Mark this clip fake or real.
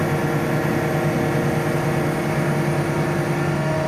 real